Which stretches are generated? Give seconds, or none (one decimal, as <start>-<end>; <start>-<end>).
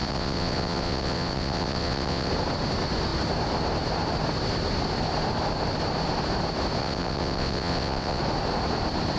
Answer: 0.0-2.3; 6.8-8.2